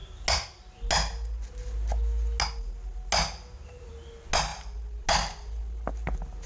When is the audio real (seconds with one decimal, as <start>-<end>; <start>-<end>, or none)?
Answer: 0.0-6.5